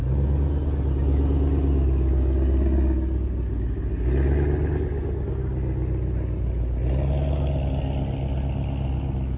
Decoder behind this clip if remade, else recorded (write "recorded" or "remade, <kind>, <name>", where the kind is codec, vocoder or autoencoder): recorded